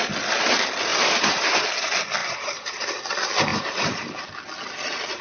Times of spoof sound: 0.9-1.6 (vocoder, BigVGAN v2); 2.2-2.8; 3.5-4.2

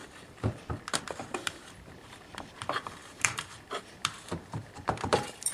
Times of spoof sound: 1.2-5.5 (vocoder, BigVGAN v2)